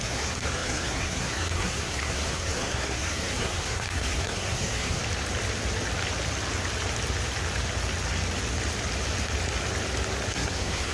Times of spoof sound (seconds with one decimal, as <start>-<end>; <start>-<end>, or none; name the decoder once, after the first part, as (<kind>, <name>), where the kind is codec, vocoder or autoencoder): 0.0-5.0 (codec, SNAC); 10.3-10.9